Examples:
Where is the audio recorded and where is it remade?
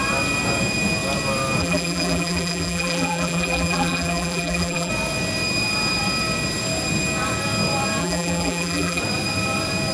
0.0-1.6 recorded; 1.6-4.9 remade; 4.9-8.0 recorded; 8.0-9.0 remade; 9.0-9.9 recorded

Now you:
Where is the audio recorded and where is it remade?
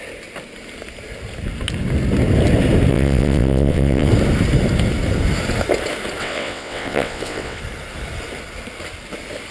0.0-2.9 recorded; 2.9-4.1 remade; 4.1-6.2 recorded; 6.2-7.6 remade; 7.6-9.5 recorded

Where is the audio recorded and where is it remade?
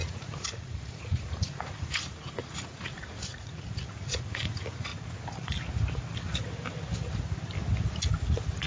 0.0-4.9 remade; 4.9-8.7 recorded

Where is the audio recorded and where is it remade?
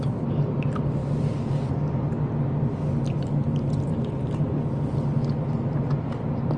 0.0-6.6 recorded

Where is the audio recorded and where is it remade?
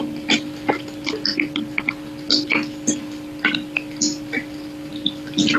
0.0-5.6 recorded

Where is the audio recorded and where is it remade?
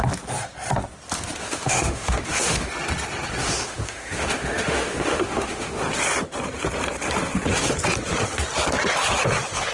0.0-1.4 recorded; 1.4-2.7 remade; 2.7-3.4 recorded; 3.4-5.8 remade; 5.8-9.7 recorded